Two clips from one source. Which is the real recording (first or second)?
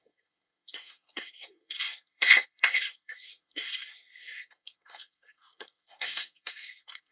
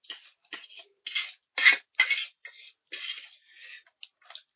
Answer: second